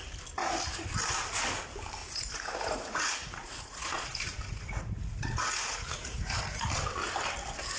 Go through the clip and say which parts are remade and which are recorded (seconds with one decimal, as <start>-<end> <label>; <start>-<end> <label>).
0.0-0.4 recorded; 0.4-0.9 remade; 0.9-2.0 recorded; 2.0-6.7 remade; 6.7-7.8 recorded